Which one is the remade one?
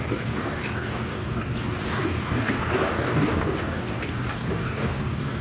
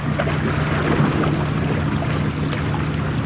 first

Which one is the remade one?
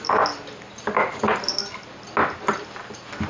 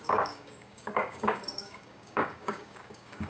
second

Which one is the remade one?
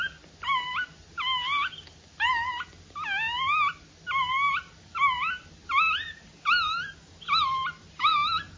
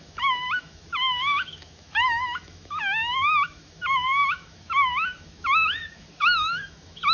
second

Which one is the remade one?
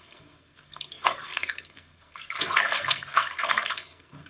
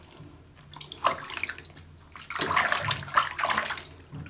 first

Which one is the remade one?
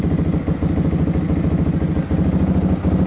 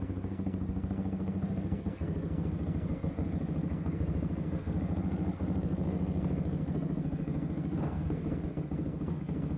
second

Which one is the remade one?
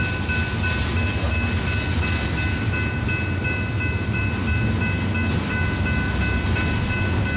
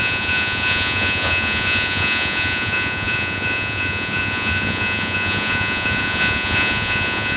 second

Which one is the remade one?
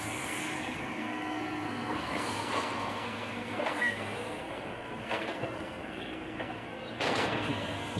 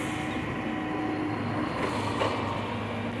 first